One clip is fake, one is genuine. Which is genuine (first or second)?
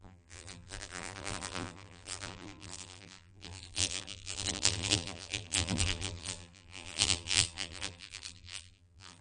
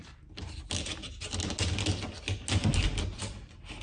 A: second